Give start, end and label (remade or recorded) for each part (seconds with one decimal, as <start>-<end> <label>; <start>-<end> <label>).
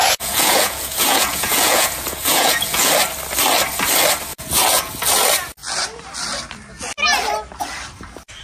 0.0-2.9 remade; 2.9-4.3 recorded; 4.3-4.9 remade; 4.9-8.4 recorded